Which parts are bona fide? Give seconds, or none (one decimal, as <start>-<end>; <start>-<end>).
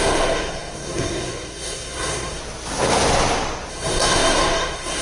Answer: 2.4-3.7